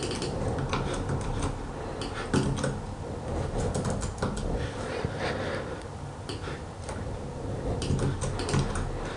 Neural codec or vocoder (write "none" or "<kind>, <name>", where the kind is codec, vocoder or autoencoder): none